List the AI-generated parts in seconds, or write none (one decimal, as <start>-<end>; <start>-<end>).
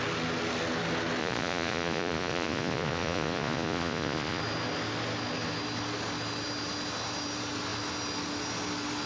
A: 1.2-4.4